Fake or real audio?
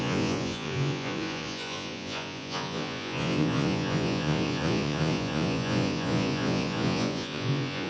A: fake